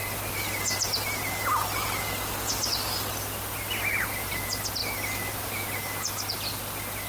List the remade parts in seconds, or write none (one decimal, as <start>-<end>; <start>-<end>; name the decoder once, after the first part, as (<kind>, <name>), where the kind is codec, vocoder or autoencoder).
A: 0.0-4.3 (vocoder, BigVGAN v2); 4.8-6.6